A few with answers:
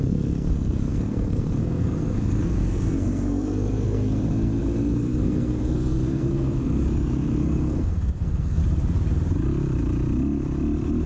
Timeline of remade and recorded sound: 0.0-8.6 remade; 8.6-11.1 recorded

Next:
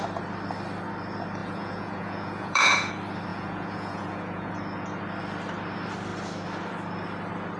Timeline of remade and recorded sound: 0.0-1.4 recorded; 1.4-2.9 remade; 2.9-3.3 recorded; 3.3-4.5 remade; 4.5-7.6 recorded

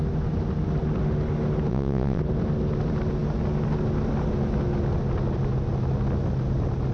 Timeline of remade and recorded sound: 0.0-1.7 recorded; 1.7-2.2 remade; 2.2-6.9 recorded